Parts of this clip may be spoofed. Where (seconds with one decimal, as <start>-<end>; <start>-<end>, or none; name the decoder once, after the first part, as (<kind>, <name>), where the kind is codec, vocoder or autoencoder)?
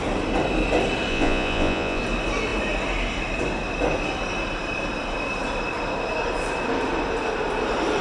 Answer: 1.1-2.0 (vocoder, Vocos)